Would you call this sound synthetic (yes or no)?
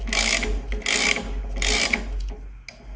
no